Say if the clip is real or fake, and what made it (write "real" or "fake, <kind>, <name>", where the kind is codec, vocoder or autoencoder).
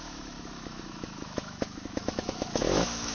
fake, autoencoder, DAC-VAE